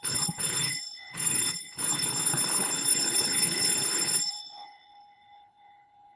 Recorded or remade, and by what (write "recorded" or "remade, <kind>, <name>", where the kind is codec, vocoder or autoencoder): remade, codec, HILCodec